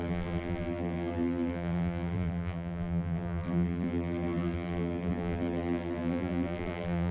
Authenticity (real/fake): fake